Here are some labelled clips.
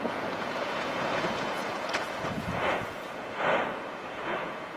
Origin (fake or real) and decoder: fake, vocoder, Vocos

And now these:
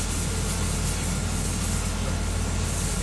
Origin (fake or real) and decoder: real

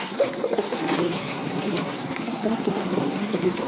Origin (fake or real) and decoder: fake, codec, SNAC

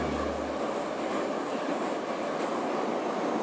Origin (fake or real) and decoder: real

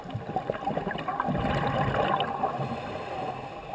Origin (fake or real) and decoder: real